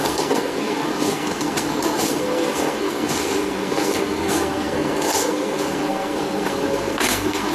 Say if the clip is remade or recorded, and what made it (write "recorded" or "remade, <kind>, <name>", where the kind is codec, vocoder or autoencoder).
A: remade, codec, SNAC